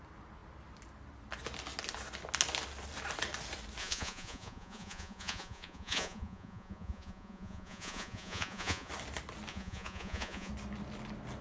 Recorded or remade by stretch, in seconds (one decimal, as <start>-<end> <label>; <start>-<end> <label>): 0.0-3.8 recorded; 3.8-8.9 remade; 8.9-9.5 recorded; 9.5-10.5 remade; 10.5-11.4 recorded

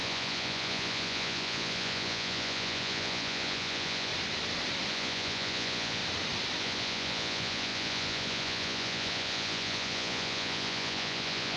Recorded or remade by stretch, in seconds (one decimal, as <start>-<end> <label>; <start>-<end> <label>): 0.0-4.1 remade; 4.1-4.9 recorded; 4.9-6.0 remade; 6.0-6.6 recorded; 6.6-11.6 remade

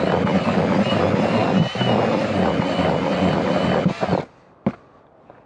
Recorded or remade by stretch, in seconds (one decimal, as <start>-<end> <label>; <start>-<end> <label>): 0.0-5.5 recorded

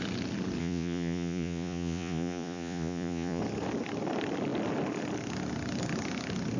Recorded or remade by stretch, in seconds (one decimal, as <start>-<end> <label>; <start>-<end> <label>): 0.0-0.6 recorded; 0.6-3.4 remade; 3.4-6.6 recorded

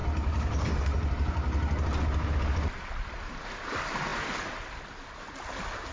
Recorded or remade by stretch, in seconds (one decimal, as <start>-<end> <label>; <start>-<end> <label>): 0.0-5.9 recorded

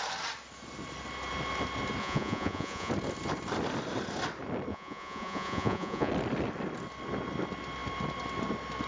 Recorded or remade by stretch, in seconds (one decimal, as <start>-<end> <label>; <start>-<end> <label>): 0.0-2.0 recorded; 2.0-2.9 remade; 2.9-4.7 recorded; 4.7-6.1 remade; 6.1-8.9 recorded

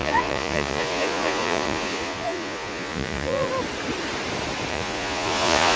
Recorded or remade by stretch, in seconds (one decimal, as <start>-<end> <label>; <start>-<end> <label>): 0.0-3.5 remade; 3.5-4.7 recorded; 4.7-5.8 remade